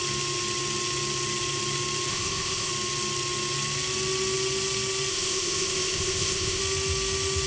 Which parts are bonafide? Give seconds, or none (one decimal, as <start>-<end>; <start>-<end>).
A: 0.0-2.1; 2.7-5.1; 6.6-7.5